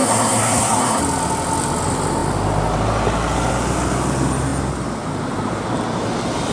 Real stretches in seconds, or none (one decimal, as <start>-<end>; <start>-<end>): 1.0-6.5